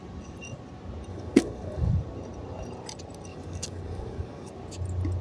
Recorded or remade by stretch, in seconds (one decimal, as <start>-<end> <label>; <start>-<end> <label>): 0.0-1.1 recorded; 1.1-1.9 remade; 1.9-3.3 recorded; 3.3-4.5 remade; 4.5-5.2 recorded